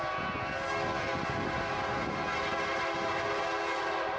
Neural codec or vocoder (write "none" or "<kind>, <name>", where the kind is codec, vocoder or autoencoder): none